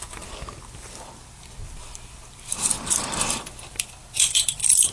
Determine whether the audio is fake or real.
fake